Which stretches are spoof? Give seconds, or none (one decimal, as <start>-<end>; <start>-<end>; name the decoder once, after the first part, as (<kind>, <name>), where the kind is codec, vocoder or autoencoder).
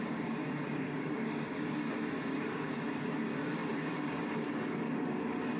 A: 0.0-5.6 (codec, DAC)